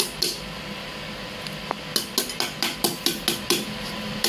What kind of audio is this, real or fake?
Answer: real